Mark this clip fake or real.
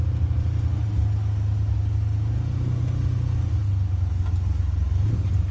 real